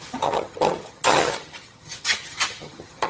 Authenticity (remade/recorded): remade